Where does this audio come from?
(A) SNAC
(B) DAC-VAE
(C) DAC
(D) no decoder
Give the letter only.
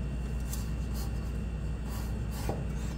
D